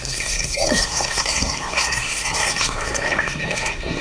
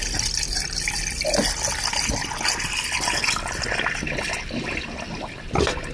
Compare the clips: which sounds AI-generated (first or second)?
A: first